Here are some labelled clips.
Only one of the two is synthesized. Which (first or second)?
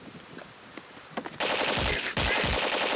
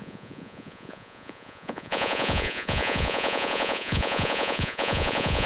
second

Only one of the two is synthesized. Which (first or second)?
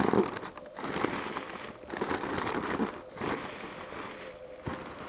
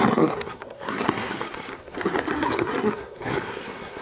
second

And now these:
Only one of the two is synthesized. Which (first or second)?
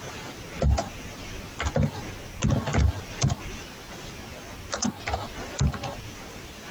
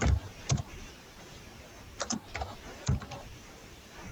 second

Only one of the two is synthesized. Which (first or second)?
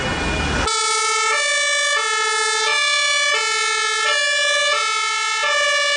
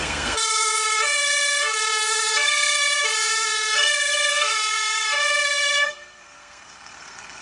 second